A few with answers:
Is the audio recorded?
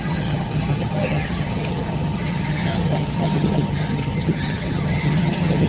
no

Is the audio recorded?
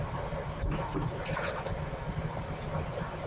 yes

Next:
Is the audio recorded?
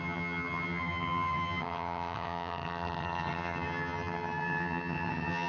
no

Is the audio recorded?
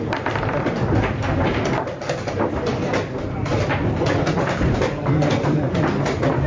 yes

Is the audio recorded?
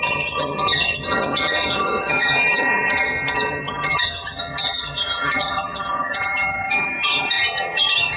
no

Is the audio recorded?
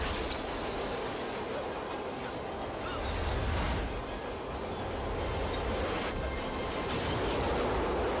yes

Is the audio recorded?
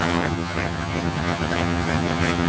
no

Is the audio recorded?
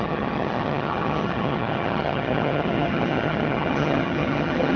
no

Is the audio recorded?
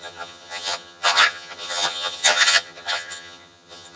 no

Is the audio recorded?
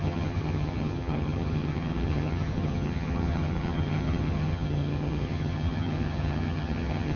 no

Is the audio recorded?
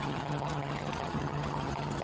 no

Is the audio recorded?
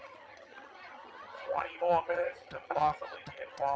no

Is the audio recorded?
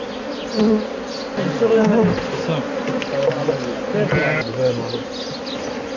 yes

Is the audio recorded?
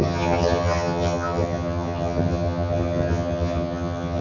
no